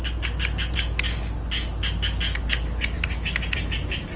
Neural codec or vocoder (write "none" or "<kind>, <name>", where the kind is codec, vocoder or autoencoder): none